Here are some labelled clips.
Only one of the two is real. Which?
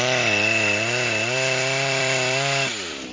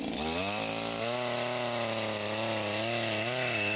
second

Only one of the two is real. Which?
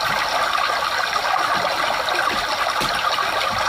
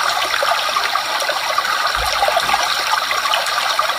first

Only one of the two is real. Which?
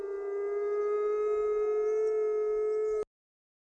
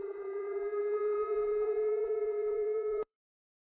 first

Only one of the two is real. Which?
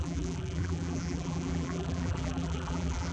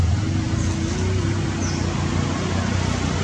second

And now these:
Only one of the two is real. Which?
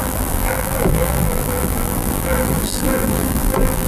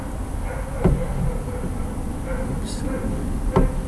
second